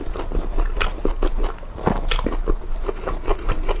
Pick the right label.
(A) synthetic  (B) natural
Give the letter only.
B